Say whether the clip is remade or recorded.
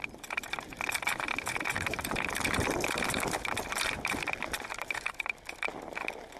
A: recorded